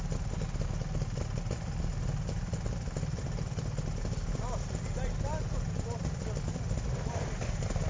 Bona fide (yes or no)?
yes